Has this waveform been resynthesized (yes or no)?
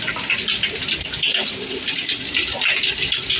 no